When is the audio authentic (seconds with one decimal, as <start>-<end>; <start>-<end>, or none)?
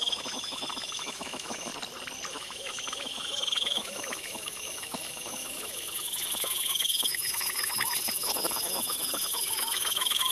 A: 1.7-2.3